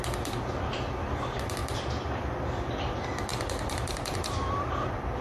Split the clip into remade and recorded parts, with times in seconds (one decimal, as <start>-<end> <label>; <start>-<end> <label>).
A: 0.0-1.6 recorded; 1.6-2.9 remade; 2.9-3.3 recorded; 3.3-5.2 remade